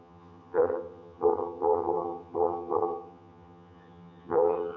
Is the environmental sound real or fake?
fake